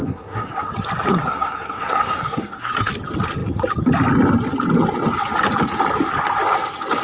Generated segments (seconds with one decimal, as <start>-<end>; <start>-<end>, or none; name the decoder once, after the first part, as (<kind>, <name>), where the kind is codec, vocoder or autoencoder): 0.0-0.7 (codec, SNAC); 1.1-2.9